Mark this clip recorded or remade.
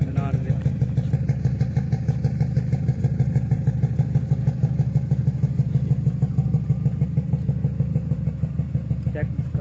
remade